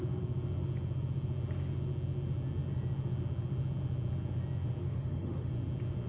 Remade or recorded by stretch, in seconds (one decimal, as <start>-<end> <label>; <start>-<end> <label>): 0.0-4.8 recorded; 4.8-5.5 remade; 5.5-6.1 recorded